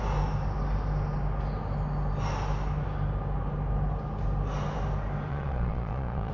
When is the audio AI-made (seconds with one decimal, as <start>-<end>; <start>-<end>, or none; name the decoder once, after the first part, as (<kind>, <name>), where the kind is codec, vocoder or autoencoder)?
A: 5.3-6.3 (vocoder, Vocos)